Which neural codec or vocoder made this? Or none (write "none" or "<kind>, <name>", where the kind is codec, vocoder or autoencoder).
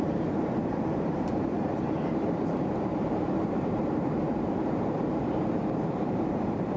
vocoder, BigVGAN v2